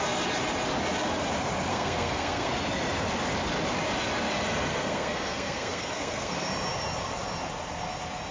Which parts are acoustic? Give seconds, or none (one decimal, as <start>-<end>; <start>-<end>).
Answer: 0.0-1.7; 2.5-4.7; 6.5-8.3

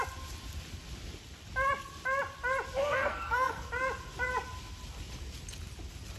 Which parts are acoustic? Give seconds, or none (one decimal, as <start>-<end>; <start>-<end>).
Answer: 0.0-2.8; 3.7-6.2

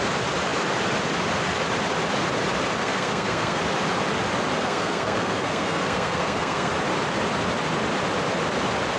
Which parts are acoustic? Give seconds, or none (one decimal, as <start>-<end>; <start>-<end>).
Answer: 0.0-2.8; 3.6-4.6; 6.7-9.0

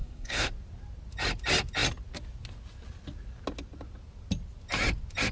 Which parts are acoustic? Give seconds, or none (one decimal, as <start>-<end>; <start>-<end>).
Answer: 0.5-5.3

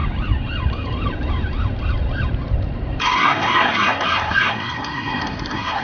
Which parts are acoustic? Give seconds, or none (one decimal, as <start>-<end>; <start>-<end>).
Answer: 0.0-3.0

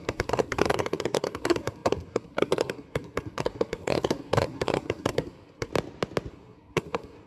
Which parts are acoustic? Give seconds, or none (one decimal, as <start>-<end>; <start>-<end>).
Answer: 5.7-6.3